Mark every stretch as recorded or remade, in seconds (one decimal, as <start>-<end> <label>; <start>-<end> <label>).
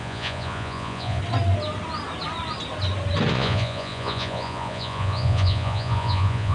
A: 0.0-1.2 remade; 1.2-3.3 recorded; 3.3-6.5 remade